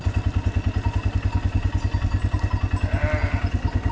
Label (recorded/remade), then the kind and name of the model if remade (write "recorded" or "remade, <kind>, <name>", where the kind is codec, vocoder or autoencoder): recorded